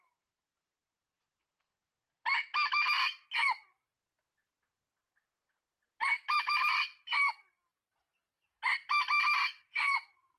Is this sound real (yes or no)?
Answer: no